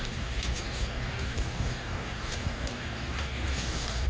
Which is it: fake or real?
fake